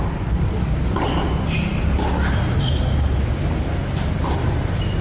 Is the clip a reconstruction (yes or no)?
no